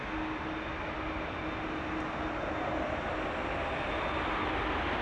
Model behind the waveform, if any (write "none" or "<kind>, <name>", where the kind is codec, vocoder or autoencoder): none